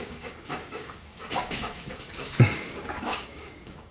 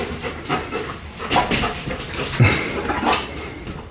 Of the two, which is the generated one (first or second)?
first